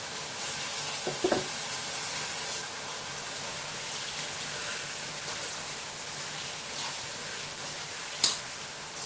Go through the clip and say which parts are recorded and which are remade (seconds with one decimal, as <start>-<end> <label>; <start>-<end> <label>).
0.0-4.6 recorded; 4.6-8.1 remade; 8.1-9.1 recorded